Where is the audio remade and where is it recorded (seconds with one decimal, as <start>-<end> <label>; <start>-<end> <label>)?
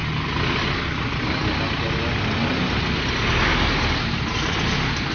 0.0-5.1 recorded